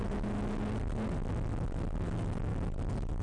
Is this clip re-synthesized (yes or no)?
no